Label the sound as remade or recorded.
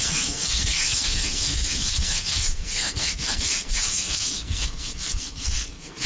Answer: remade